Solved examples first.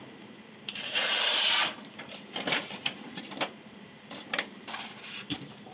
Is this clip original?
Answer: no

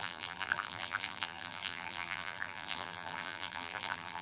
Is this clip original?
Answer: no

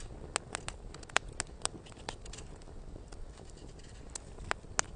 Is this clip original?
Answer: yes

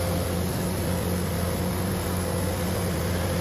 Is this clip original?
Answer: yes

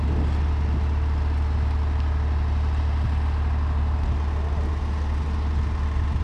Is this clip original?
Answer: yes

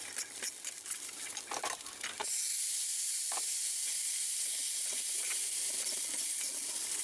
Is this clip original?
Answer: yes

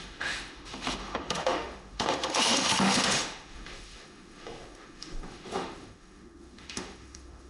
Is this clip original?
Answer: no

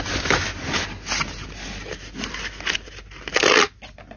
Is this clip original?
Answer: yes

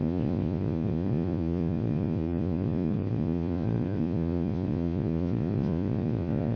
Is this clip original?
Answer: no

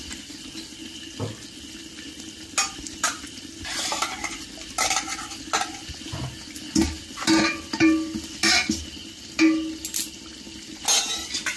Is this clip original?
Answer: yes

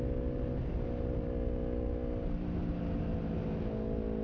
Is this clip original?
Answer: yes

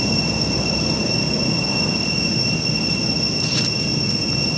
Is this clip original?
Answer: yes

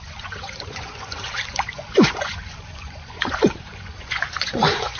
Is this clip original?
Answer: no